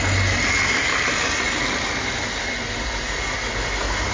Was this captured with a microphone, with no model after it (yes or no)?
yes